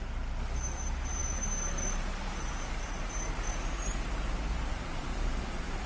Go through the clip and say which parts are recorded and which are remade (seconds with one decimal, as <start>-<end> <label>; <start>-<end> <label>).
0.0-4.7 recorded; 4.7-5.9 remade